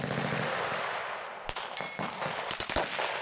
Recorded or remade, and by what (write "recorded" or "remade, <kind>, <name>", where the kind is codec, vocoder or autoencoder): recorded